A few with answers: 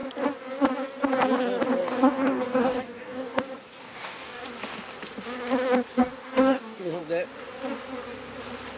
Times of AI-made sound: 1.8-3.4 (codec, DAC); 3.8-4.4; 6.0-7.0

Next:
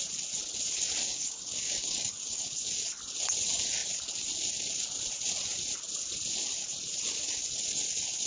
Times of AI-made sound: 1.1-2.5 (codec, DAC)

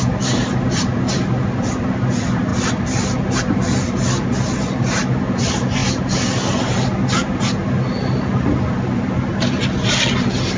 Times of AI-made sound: none

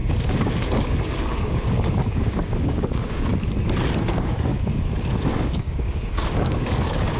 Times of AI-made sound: 0.0-3.3 (codec, DAC); 4.1-4.5; 5.3-7.2

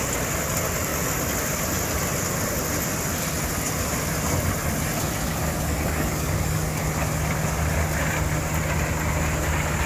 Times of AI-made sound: 5.3-6.8 (codec, DAC)

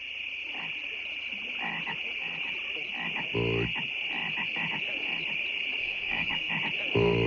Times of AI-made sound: 5.8-6.5 (codec, DAC)

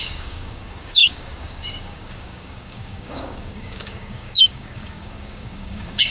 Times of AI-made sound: 0.0-6.1 (codec, DAC)